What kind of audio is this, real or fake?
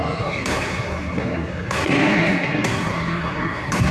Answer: fake